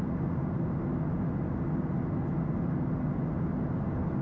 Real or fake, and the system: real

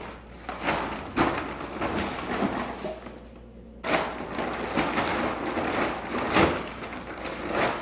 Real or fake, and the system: real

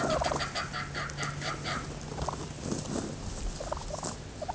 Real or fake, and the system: real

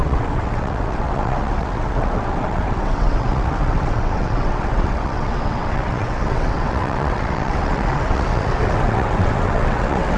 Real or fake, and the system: fake, vocoder, WaveNeXt